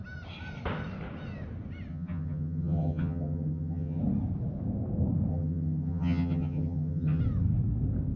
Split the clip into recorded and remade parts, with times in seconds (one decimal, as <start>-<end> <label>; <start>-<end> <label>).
0.0-1.9 recorded; 1.9-4.0 remade; 4.0-5.3 recorded; 5.3-7.2 remade; 7.2-8.2 recorded